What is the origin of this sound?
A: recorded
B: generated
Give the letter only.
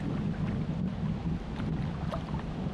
A